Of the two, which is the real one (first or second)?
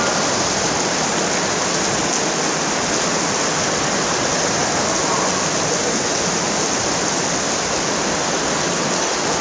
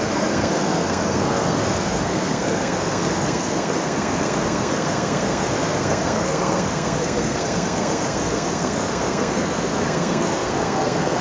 first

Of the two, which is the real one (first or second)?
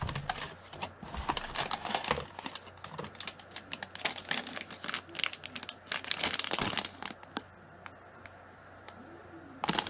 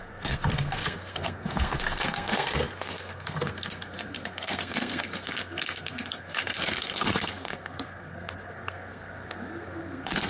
first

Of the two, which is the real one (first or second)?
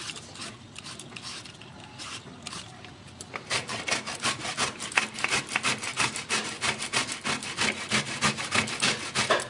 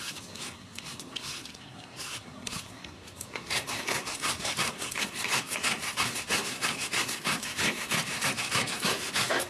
first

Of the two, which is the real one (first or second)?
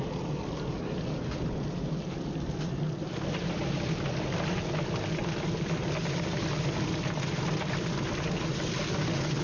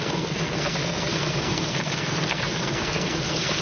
first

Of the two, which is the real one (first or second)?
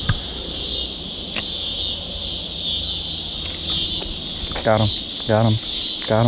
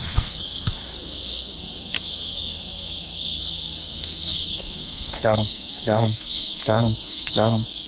first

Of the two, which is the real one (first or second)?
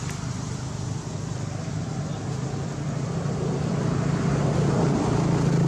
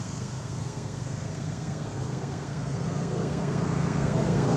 first